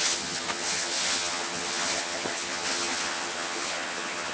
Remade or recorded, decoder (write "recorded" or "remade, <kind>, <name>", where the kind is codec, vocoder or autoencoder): remade, vocoder, HiFi-GAN